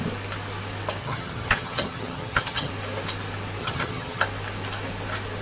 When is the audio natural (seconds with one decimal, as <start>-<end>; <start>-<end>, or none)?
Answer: 0.0-1.0; 2.7-3.6; 4.2-5.4